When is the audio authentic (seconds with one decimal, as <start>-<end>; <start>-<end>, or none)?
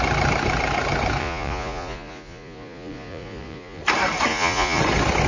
0.0-1.2; 3.8-4.3; 4.8-5.3